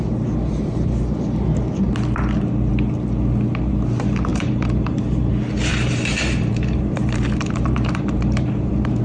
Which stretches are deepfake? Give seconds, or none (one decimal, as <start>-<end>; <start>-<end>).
4.3-5.3; 5.7-9.0